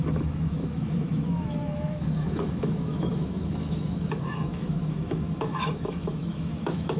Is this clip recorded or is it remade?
remade